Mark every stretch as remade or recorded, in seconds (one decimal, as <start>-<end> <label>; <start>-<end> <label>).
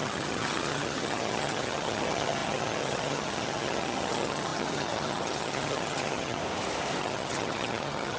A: 0.0-6.4 remade; 6.4-7.0 recorded; 7.0-8.2 remade